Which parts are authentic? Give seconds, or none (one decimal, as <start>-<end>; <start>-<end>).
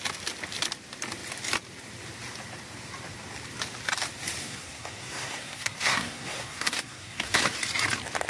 0.0-4.4; 7.4-8.3